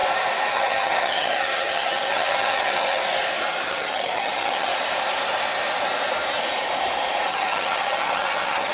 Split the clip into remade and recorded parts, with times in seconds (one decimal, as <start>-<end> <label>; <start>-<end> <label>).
0.0-0.5 recorded; 0.5-3.0 remade; 3.0-3.7 recorded; 3.7-4.7 remade; 4.7-7.3 recorded; 7.3-8.7 remade